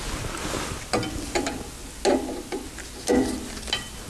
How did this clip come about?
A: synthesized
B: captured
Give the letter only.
B